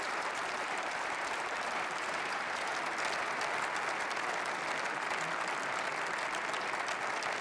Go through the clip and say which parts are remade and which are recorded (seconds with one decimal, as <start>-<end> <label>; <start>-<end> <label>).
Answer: 0.0-2.7 remade; 2.7-7.4 recorded